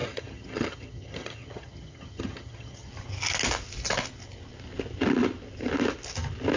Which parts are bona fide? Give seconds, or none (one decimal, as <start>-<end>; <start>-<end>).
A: 2.9-6.6